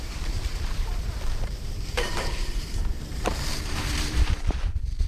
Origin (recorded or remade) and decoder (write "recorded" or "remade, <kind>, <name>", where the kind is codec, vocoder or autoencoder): remade, vocoder, BigVGAN v2